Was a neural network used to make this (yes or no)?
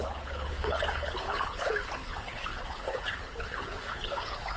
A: yes